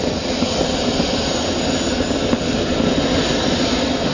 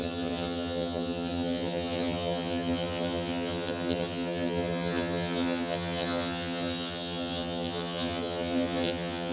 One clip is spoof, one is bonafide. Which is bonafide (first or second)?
first